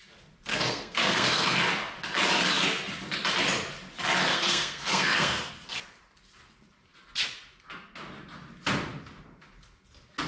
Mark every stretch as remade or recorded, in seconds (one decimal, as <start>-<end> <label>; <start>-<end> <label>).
0.0-0.5 recorded; 0.5-1.6 remade; 1.6-4.3 recorded; 4.3-5.5 remade; 5.5-10.3 recorded